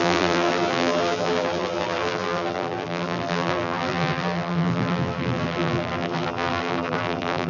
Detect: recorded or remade remade